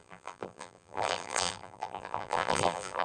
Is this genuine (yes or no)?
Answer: no